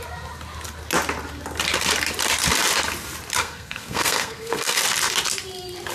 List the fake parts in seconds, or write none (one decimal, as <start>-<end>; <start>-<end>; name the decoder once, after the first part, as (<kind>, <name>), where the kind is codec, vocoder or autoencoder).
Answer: 3.4-4.8 (codec, SNAC)